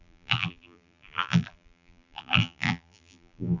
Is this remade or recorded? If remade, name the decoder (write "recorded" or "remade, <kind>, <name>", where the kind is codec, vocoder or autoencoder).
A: remade, vocoder, BigVGAN v2